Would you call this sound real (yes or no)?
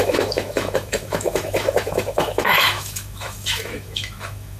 no